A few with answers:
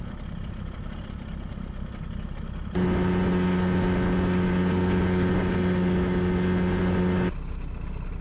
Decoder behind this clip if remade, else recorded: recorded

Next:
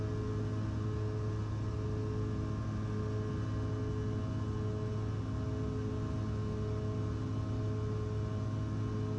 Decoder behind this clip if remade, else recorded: recorded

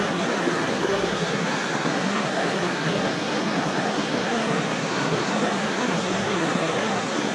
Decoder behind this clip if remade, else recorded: remade, codec, SNAC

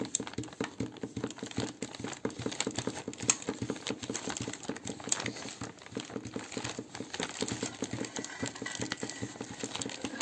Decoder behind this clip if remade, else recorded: recorded